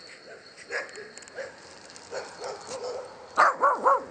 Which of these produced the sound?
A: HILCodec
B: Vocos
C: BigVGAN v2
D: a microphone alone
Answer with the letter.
D